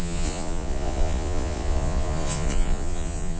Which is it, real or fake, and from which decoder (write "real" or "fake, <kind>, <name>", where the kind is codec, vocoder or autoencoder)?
fake, vocoder, Vocos